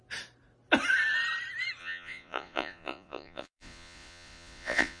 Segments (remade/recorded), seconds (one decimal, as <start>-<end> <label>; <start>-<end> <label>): 0.0-1.8 recorded; 1.8-5.0 remade

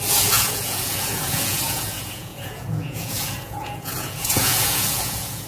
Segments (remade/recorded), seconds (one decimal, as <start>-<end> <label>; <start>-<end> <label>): 0.0-5.5 remade

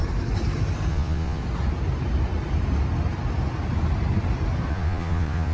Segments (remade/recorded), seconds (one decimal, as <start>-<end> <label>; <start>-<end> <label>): 0.0-0.9 recorded; 0.9-1.4 remade; 1.4-4.7 recorded; 4.7-5.5 remade

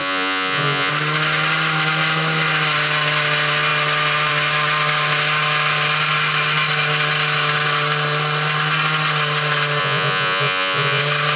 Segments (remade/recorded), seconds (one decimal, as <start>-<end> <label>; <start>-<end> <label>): 0.0-0.9 remade; 0.9-9.8 recorded; 9.8-11.0 remade; 11.0-11.4 recorded

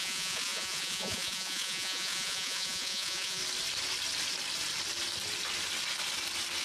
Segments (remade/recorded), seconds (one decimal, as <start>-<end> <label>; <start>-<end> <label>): 0.0-3.4 remade; 3.4-6.6 recorded

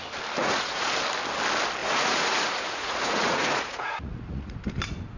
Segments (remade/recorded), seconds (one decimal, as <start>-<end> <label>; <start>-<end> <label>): 0.0-0.4 recorded; 0.4-0.9 remade; 0.9-1.8 recorded; 1.8-4.6 remade; 4.6-5.2 recorded